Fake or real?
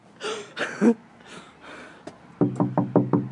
real